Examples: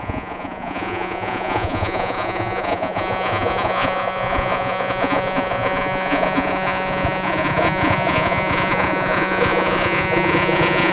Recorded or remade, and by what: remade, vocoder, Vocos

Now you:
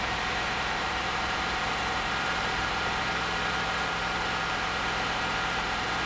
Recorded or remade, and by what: remade, vocoder, BigVGAN v2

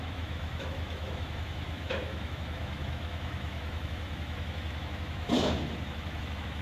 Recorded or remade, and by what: remade, autoencoder, DAC-VAE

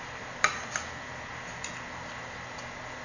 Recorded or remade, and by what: recorded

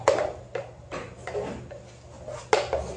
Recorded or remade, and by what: recorded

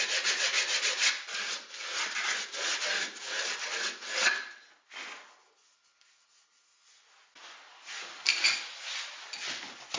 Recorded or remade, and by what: recorded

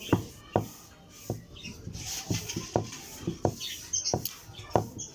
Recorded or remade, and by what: recorded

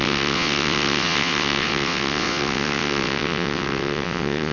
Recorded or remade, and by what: remade, vocoder, WaveNeXt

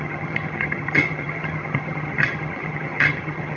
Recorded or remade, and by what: remade, vocoder, HiFi-GAN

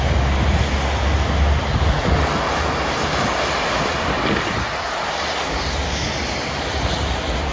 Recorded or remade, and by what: recorded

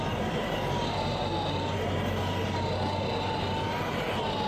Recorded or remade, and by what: recorded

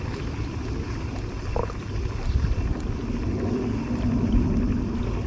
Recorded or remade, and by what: recorded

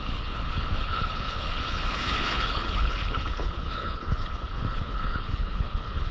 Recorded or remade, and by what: remade, codec, HILCodec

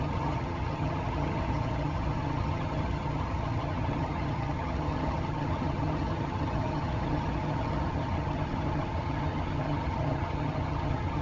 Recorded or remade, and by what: remade, vocoder, HiFi-GAN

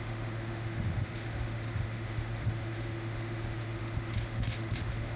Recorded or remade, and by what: remade, autoencoder, DAC-VAE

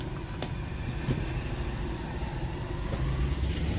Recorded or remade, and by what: recorded